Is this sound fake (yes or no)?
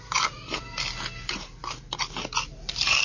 no